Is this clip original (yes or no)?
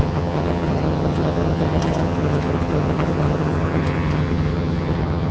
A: no